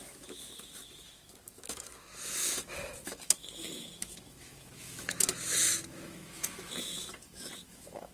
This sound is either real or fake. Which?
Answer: fake